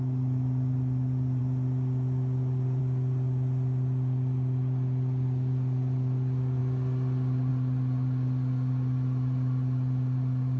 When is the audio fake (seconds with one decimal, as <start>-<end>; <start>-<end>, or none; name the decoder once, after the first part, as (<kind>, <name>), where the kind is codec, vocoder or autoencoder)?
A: none